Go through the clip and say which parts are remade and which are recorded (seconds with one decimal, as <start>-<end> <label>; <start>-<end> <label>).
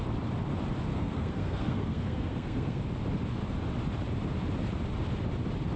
0.0-0.9 recorded; 0.9-2.8 remade; 2.8-5.8 recorded